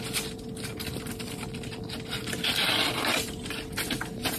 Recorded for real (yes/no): yes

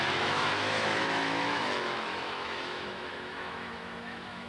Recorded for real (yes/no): no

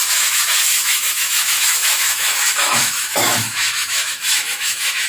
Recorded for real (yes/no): no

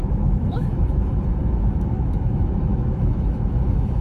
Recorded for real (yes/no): no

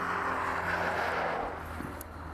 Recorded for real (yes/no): yes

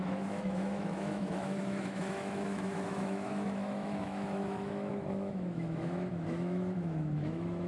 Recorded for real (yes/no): no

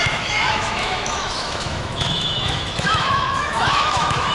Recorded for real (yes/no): no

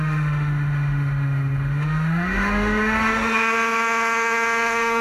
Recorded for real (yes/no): no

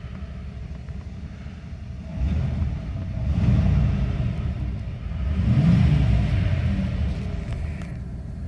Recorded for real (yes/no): yes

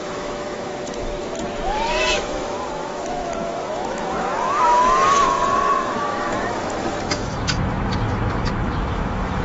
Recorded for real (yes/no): no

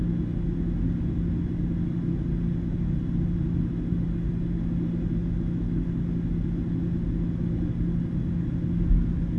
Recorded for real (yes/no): yes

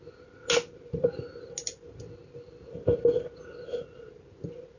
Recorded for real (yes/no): yes